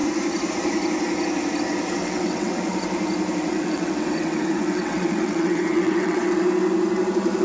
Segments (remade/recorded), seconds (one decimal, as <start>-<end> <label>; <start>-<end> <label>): 0.0-2.0 recorded; 2.0-2.5 remade; 2.5-3.4 recorded; 3.4-6.2 remade; 6.2-7.4 recorded